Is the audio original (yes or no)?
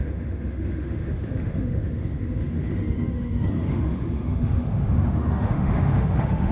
no